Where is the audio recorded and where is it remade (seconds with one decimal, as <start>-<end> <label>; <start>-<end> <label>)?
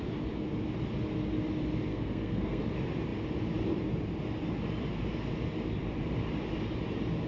0.0-1.9 recorded; 1.9-2.6 remade; 2.6-7.3 recorded